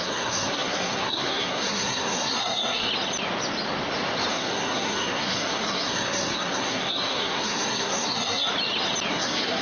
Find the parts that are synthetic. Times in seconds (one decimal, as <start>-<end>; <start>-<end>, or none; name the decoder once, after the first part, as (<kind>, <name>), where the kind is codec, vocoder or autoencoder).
0.0-2.9 (codec, SNAC); 4.3-8.5; 9.1-9.6